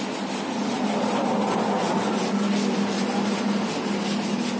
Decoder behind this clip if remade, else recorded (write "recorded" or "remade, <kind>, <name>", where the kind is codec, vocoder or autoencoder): recorded